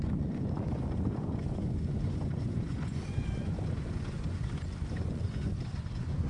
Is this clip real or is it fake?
fake